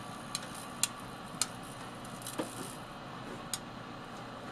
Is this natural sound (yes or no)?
yes